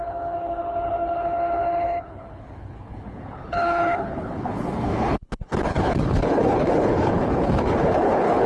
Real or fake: fake